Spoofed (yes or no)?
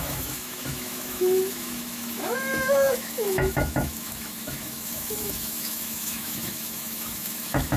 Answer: yes